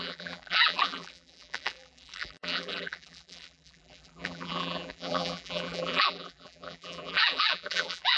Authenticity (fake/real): fake